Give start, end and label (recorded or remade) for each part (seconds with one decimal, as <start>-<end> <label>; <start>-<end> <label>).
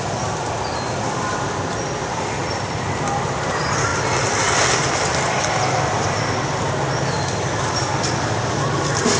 0.0-9.2 recorded